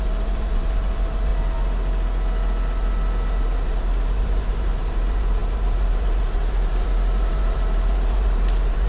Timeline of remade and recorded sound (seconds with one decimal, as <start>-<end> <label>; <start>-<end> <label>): 0.0-1.3 remade; 1.3-3.4 recorded; 3.4-8.9 remade